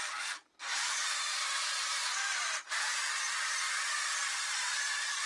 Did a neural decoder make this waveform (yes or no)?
yes